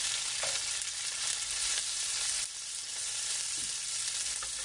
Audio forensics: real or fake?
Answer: real